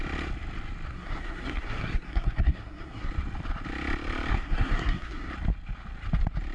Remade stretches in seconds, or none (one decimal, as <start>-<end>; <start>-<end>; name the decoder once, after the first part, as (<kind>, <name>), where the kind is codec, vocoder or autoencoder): 0.9-3.1 (codec, SNAC); 4.3-5.3